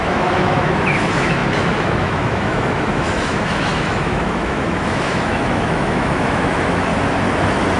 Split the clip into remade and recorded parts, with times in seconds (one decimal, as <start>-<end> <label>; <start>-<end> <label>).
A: 0.0-6.9 remade; 6.9-7.8 recorded